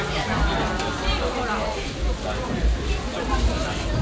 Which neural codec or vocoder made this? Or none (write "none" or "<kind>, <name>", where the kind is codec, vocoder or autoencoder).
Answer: none